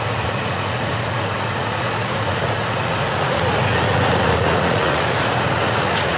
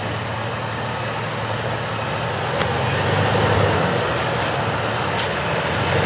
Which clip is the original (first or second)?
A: second